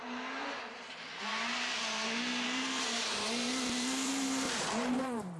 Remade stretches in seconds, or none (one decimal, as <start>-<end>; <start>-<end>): 0.0-5.4